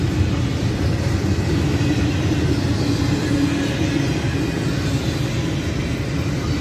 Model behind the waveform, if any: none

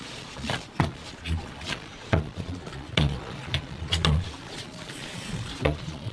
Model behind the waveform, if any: vocoder, Vocos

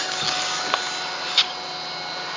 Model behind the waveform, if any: none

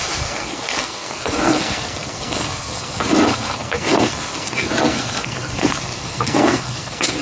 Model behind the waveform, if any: codec, SNAC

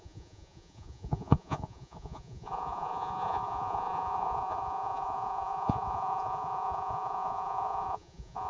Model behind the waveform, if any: vocoder, Vocos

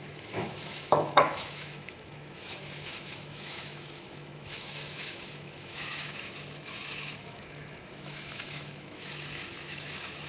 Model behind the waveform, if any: autoencoder, DAC-VAE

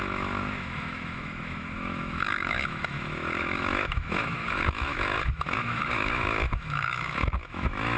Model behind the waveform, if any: autoencoder, DAC-VAE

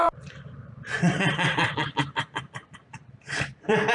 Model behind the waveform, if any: vocoder, BigVGAN v2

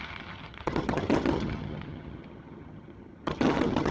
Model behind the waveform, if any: vocoder, HiFi-GAN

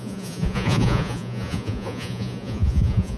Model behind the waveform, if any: vocoder, Vocos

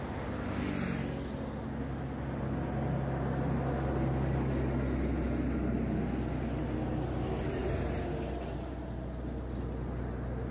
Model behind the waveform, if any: none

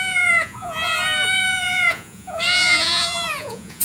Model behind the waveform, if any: vocoder, Vocos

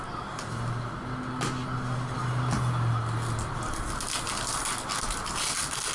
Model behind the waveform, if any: none